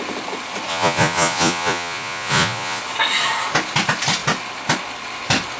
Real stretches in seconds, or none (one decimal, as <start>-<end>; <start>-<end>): 0.0-0.7; 2.8-5.6